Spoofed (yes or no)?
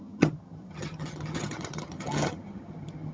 yes